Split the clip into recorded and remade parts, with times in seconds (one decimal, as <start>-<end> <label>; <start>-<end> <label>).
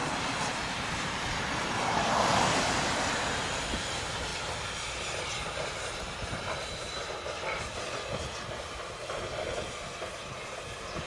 0.0-2.5 remade; 2.5-11.1 recorded